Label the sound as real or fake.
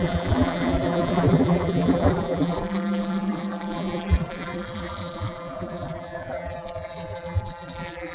fake